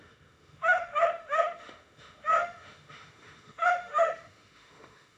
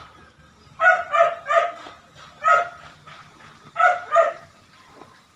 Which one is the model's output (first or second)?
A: first